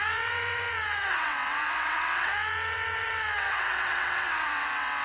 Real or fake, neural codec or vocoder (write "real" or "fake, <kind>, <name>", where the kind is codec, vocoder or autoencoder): fake, vocoder, WaveNeXt